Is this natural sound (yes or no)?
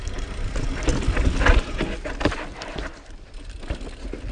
yes